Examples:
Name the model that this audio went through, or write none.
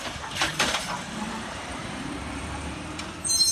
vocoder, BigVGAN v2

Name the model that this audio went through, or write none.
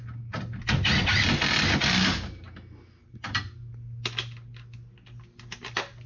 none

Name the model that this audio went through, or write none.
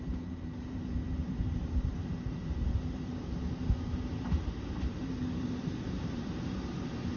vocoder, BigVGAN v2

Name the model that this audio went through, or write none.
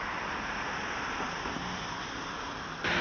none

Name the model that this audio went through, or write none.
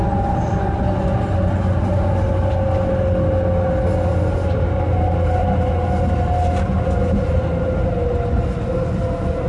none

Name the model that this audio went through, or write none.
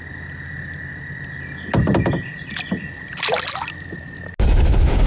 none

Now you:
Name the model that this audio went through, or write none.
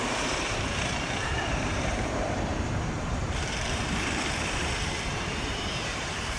vocoder, BigVGAN v2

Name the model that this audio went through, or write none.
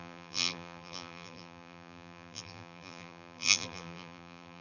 vocoder, BigVGAN v2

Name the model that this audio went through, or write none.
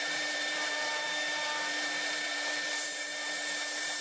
vocoder, BigVGAN v2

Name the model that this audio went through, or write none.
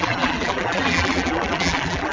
vocoder, BigVGAN v2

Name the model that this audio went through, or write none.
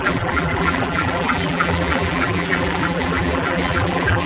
vocoder, BigVGAN v2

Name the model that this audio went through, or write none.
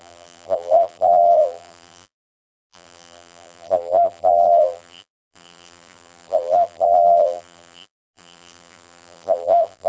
vocoder, BigVGAN v2